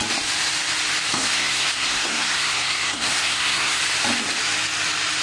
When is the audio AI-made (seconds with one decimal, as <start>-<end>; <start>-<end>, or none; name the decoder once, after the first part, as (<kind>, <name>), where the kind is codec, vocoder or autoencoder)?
1.1-3.8 (codec, SNAC)